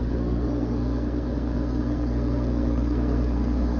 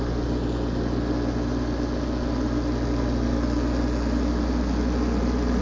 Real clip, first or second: second